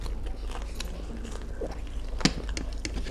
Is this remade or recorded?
recorded